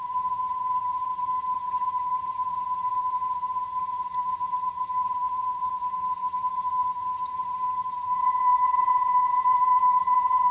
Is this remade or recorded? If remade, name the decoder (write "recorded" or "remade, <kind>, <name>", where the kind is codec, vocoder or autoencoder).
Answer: remade, vocoder, HiFi-GAN